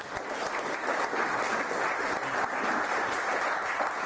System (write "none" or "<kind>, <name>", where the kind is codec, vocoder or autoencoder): none